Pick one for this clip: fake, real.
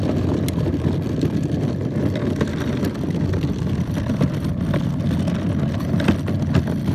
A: real